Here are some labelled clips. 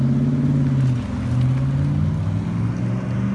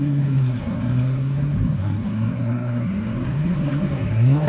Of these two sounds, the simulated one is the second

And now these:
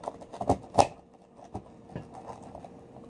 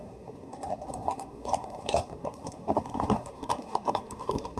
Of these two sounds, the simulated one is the second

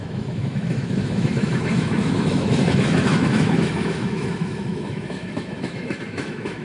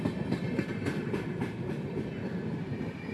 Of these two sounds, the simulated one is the first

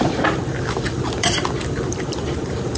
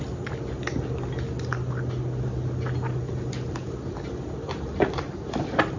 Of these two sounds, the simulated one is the first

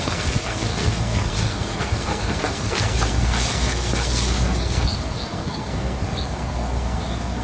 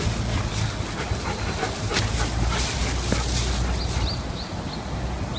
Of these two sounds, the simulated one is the first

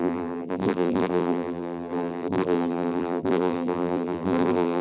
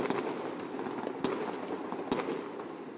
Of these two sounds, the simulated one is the first